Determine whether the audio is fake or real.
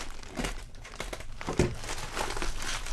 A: real